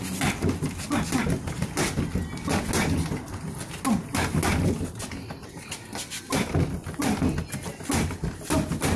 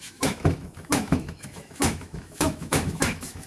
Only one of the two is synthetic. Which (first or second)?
second